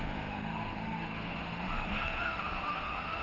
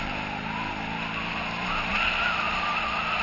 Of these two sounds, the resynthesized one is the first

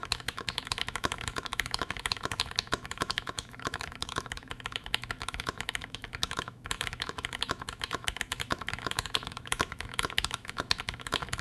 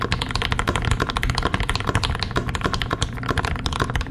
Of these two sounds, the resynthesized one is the first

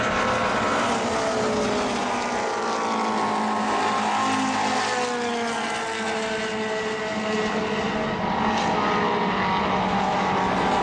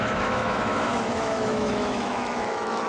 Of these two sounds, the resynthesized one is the second